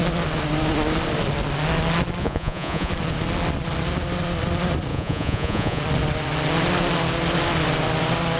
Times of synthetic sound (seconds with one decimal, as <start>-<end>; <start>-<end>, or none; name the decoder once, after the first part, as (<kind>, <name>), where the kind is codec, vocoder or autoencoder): 2.2-2.9 (vocoder, Vocos); 4.9-5.8